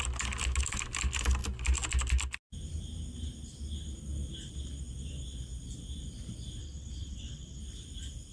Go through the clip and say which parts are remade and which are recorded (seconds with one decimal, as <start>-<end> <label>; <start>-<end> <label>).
0.0-6.6 recorded; 6.6-7.6 remade; 7.6-8.3 recorded